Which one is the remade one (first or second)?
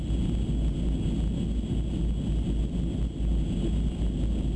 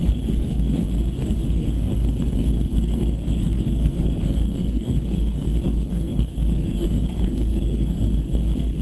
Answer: second